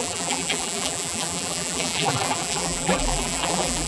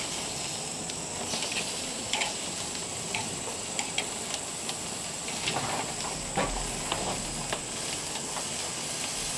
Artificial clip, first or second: first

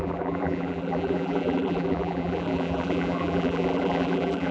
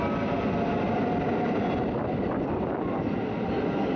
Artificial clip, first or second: first